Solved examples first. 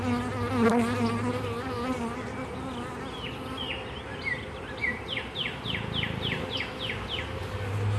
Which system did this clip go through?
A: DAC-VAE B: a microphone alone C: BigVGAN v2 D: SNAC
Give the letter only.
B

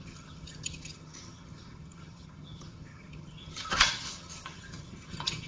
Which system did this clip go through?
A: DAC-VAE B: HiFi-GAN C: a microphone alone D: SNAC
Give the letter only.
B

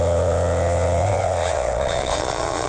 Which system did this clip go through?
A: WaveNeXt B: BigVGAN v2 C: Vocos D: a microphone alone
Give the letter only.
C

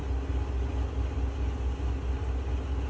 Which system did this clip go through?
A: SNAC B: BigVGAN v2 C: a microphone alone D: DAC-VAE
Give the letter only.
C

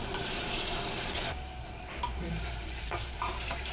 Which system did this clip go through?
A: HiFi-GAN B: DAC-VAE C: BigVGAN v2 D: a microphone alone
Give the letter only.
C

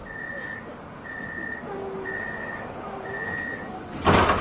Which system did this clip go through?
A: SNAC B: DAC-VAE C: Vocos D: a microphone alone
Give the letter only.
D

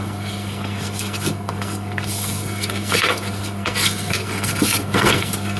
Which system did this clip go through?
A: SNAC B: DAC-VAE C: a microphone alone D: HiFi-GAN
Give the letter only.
A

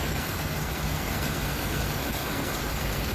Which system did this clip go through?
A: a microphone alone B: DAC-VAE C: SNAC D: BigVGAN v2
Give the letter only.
C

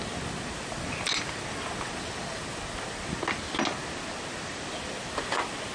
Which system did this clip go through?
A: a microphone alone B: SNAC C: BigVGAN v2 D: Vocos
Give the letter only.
A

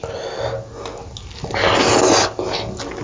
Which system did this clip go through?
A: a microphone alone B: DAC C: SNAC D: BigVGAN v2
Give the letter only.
A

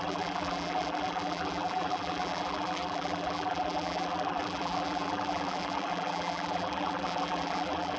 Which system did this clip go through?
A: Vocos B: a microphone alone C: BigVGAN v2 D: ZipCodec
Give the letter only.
C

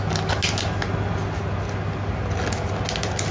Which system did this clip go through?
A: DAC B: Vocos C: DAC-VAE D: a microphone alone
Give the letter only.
D